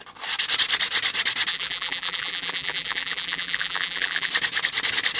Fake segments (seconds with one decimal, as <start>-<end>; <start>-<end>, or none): 1.5-4.3